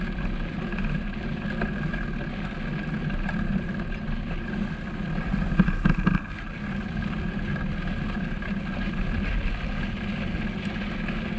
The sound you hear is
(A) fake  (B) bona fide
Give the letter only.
B